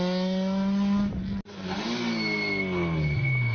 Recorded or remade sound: recorded